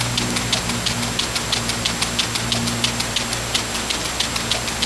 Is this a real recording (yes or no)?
yes